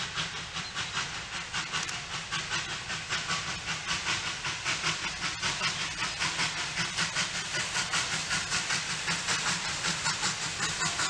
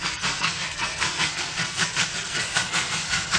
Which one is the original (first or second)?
first